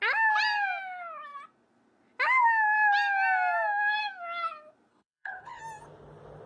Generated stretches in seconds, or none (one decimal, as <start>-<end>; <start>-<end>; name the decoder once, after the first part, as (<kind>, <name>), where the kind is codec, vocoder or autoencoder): 4.9-5.6 (codec, HILCodec)

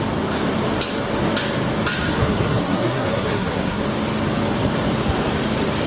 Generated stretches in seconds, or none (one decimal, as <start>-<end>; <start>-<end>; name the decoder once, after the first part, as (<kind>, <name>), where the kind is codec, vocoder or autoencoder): 2.2-3.8 (codec, SNAC)

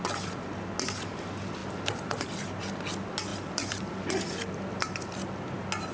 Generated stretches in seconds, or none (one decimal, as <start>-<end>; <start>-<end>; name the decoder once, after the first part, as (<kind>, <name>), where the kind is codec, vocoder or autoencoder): 1.6-2.6 (vocoder, BigVGAN v2); 3.3-3.9

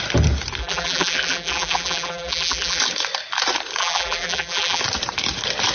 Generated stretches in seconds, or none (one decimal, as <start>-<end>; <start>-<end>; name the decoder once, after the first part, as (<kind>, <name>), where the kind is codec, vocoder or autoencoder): 0.6-2.8 (vocoder, BigVGAN v2); 3.8-4.8

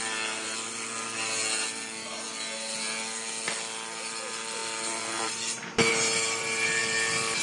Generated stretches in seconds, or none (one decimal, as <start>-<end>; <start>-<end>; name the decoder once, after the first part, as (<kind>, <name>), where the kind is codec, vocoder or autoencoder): none

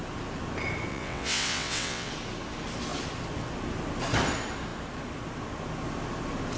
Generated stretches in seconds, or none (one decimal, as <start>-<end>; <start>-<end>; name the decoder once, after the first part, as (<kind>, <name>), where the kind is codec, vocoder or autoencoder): 0.9-2.1 (vocoder, WaveNeXt)

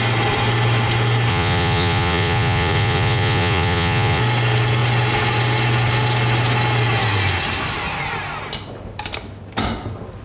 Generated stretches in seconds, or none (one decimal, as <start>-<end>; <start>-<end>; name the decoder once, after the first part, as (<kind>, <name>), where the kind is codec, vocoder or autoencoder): 1.3-4.2 (vocoder, Vocos)